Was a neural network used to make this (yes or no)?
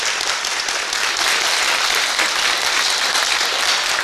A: no